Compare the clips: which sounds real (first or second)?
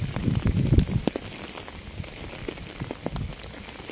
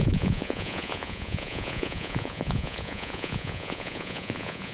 first